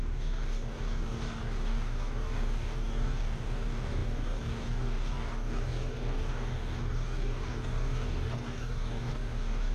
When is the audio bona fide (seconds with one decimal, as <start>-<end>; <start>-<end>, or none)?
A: none